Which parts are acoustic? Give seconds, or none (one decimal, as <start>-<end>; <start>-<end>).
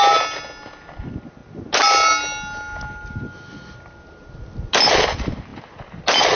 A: 0.0-6.4